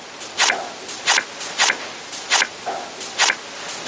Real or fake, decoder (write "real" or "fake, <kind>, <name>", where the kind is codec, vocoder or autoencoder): real